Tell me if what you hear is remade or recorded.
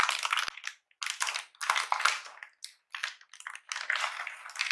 recorded